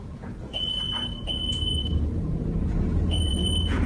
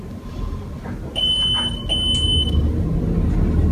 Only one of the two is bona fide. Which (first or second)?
second